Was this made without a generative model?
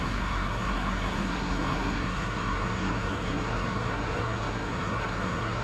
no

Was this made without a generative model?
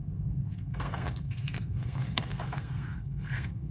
no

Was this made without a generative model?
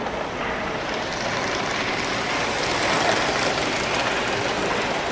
yes